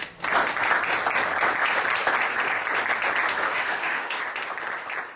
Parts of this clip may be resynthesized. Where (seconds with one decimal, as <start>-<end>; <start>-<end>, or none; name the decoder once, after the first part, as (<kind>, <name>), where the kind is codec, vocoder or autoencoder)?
3.3-4.2 (autoencoder, DAC-VAE)